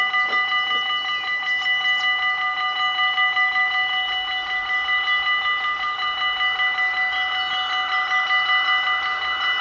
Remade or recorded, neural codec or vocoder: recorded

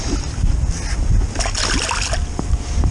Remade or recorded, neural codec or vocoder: recorded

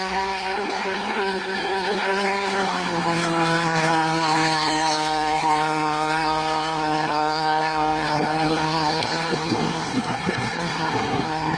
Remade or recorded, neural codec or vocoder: remade, codec, SNAC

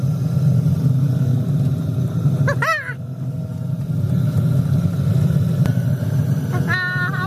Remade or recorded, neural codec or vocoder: recorded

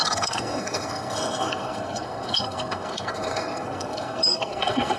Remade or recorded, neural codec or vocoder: remade, codec, SNAC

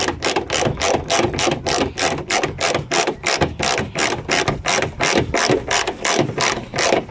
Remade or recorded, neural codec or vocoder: recorded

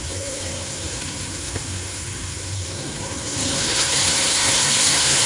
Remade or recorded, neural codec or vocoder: remade, codec, SNAC